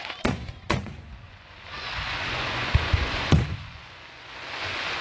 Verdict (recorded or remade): remade